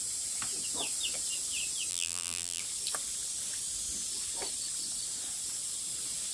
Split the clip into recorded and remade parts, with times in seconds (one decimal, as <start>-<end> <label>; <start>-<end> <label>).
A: 0.0-1.9 recorded; 1.9-2.6 remade; 2.6-6.3 recorded